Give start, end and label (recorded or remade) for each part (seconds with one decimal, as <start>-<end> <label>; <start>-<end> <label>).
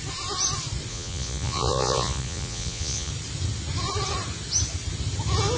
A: 0.0-0.9 recorded; 0.9-3.1 remade; 3.1-5.6 recorded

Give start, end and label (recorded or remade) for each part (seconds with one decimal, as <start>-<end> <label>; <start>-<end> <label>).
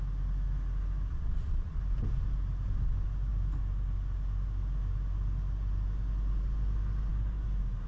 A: 0.0-1.1 recorded; 1.1-1.8 remade; 1.8-7.9 recorded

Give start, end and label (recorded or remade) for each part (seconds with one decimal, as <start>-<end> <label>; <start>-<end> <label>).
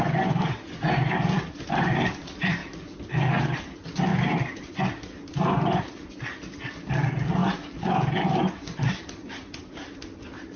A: 0.0-10.6 recorded